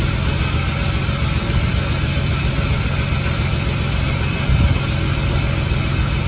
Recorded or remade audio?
recorded